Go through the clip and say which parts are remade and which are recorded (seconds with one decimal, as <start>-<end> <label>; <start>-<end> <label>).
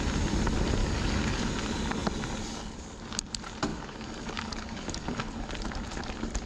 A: 0.0-0.8 recorded; 0.8-1.4 remade; 1.4-3.7 recorded; 3.7-5.5 remade; 5.5-6.5 recorded